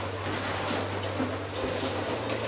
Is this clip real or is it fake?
real